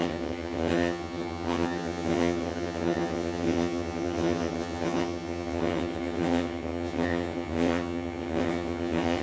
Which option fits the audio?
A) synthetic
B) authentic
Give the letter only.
A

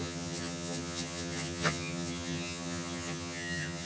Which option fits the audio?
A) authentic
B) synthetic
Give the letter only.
B